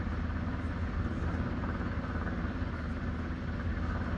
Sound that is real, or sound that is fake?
real